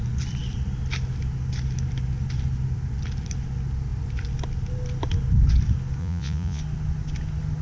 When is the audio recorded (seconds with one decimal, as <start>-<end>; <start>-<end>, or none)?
0.0-6.0; 6.6-7.6